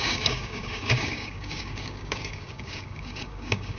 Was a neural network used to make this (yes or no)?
yes